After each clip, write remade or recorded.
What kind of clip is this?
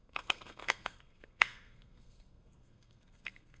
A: remade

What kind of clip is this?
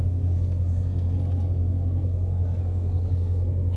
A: remade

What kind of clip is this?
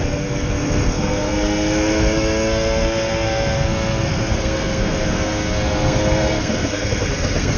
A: remade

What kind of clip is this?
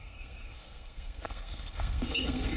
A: remade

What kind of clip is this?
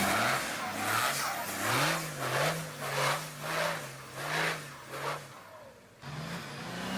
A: recorded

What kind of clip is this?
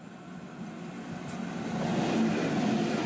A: recorded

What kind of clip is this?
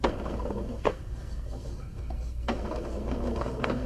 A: remade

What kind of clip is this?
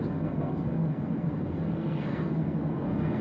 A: remade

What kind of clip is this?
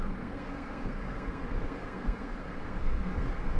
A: remade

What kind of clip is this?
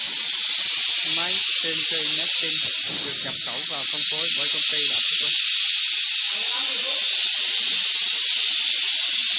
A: recorded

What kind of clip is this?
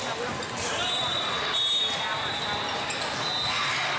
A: recorded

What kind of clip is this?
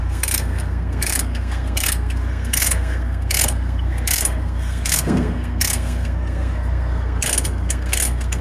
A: remade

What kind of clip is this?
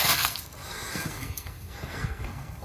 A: remade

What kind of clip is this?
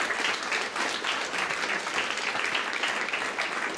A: recorded